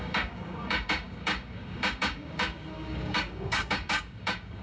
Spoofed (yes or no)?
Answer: yes